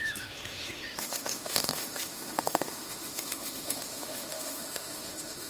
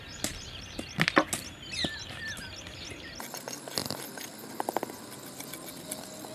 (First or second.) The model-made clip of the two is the first